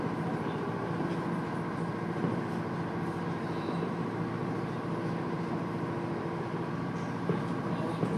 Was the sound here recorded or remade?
recorded